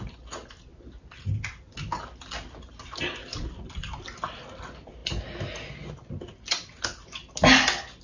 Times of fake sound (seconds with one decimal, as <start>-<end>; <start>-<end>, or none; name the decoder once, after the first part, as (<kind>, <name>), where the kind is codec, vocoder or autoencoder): none